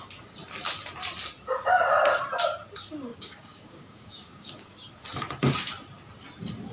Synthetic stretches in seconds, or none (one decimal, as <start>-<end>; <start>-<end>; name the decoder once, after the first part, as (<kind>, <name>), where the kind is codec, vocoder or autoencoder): 3.1-4.9 (codec, DAC)

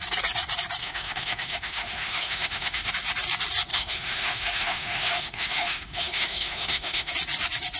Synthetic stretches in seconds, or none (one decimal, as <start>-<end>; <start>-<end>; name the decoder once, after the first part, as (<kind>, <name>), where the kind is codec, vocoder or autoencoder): 0.8-2.9 (autoencoder, DAC-VAE); 3.7-7.1

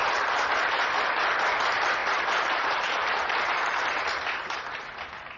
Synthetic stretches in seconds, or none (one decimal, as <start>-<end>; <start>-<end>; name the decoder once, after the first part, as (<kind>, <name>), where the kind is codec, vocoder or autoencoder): 0.0-0.5 (vocoder, BigVGAN v2); 2.0-5.0

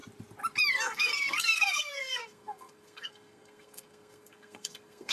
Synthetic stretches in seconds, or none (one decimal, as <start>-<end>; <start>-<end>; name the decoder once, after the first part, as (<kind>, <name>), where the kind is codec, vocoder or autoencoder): 0.7-5.1 (codec, SNAC)

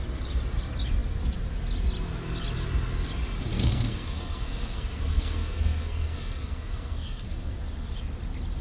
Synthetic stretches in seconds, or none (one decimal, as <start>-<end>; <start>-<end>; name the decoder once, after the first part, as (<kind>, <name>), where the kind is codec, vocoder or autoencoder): 3.5-7.6 (codec, SNAC)

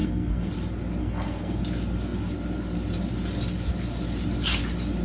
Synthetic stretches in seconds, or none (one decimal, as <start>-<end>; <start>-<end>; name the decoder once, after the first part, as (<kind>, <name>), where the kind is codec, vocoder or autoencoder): 0.0-0.5 (codec, SNAC); 1.0-1.6

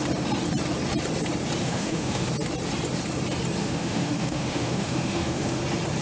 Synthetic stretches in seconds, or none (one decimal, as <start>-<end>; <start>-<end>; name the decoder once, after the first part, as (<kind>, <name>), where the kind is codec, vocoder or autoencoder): 1.6-2.3 (autoencoder, DAC-VAE); 3.6-5.6

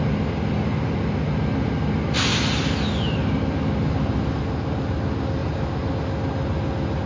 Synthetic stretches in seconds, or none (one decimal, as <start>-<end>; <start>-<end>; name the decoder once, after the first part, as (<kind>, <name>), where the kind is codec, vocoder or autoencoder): none